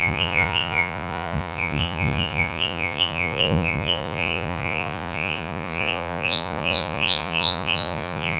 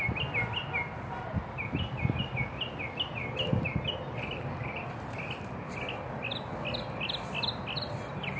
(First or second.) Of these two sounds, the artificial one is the first